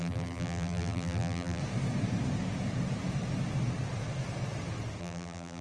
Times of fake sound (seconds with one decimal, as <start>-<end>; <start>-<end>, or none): 0.0-1.6; 5.0-5.6